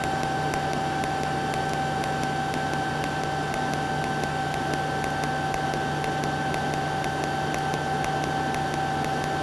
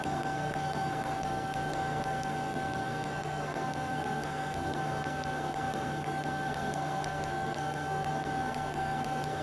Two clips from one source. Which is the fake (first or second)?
second